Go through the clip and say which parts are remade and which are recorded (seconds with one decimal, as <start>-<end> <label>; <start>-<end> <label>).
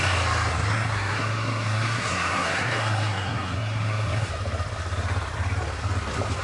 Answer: 0.0-0.5 recorded; 0.5-4.3 remade; 4.3-6.4 recorded